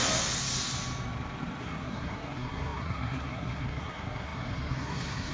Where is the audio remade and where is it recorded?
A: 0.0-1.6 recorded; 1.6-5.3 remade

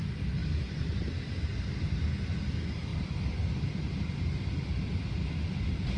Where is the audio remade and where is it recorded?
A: 0.0-2.9 recorded; 2.9-4.1 remade; 4.1-6.0 recorded

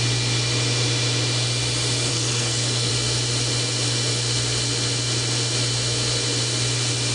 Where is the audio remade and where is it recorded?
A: 0.0-2.1 recorded; 2.1-2.9 remade; 2.9-7.1 recorded

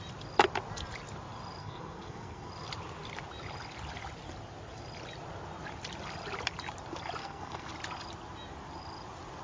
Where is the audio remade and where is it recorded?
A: 0.0-1.6 recorded; 1.6-2.5 remade; 2.5-7.2 recorded; 7.2-7.7 remade; 7.7-9.4 recorded

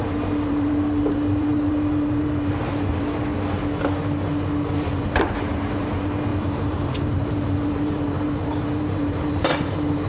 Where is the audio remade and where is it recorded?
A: 0.0-3.3 remade; 3.3-4.7 recorded; 4.7-10.1 remade

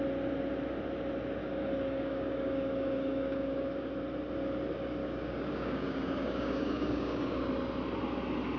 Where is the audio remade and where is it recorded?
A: 0.0-1.4 recorded; 1.4-3.9 remade; 3.9-5.0 recorded; 5.0-7.4 remade; 7.4-8.6 recorded

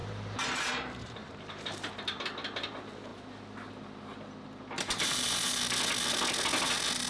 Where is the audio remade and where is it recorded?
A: 0.0-1.9 remade; 1.9-7.1 recorded

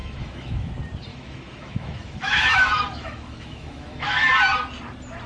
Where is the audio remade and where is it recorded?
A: 0.0-0.7 remade; 0.7-1.1 recorded; 1.1-4.3 remade; 4.3-5.3 recorded